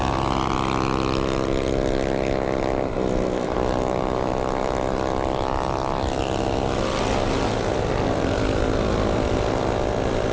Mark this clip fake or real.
real